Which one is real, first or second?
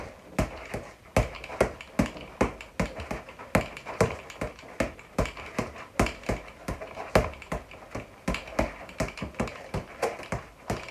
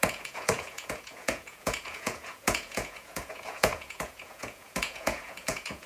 first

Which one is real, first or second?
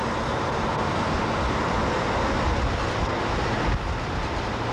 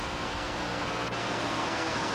first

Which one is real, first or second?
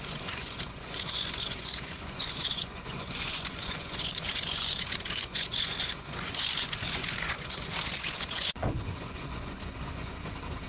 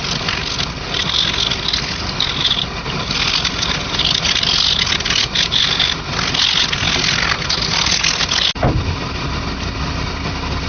second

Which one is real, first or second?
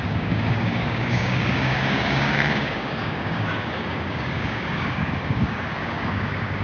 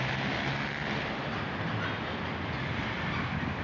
second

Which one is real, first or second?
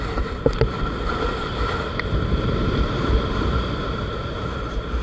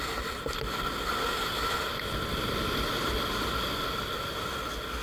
second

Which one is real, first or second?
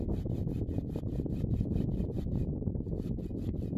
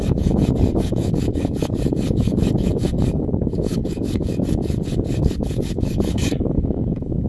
first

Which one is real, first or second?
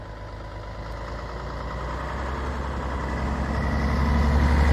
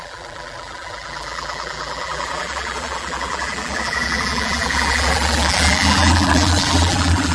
first